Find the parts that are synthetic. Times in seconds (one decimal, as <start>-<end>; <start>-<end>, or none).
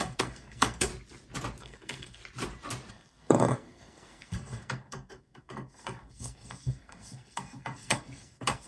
0.0-0.9; 1.6-2.2; 2.9-8.7